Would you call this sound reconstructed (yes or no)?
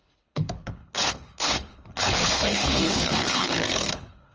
yes